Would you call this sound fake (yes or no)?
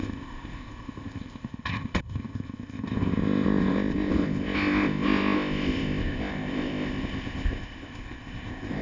yes